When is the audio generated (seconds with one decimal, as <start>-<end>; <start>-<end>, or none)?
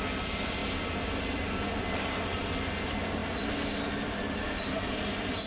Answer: none